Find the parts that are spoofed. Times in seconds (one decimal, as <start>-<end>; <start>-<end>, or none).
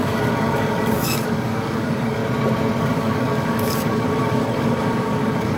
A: 0.0-2.2; 2.8-5.6